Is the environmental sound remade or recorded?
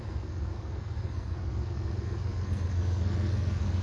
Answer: remade